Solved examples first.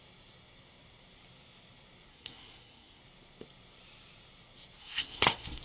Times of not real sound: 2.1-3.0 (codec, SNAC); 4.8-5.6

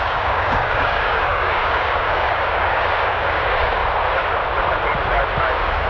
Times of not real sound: 0.0-3.8 (codec, DAC); 5.4-5.9

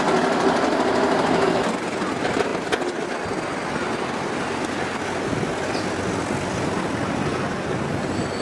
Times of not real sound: none

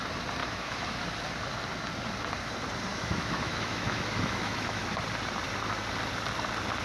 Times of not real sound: 0.4-1.0 (autoencoder, DAC-VAE); 2.9-4.8

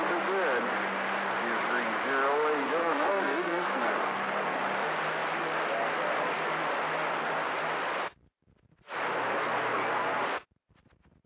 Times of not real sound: 2.8-4.6 (codec, SNAC)

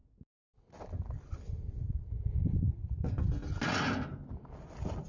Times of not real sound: none

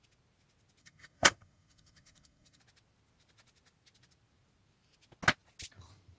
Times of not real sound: 0.8-2.6 (codec, SNAC)

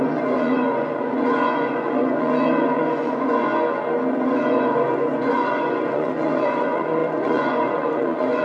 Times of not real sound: 0.0-3.5 (vocoder, Vocos); 4.1-8.4